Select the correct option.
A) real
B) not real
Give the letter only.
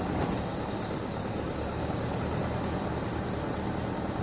A